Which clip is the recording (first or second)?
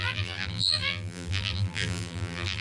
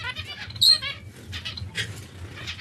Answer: second